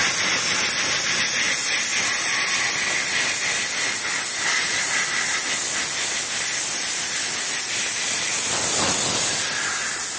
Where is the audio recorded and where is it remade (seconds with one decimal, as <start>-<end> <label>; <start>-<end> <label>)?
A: 0.0-10.2 recorded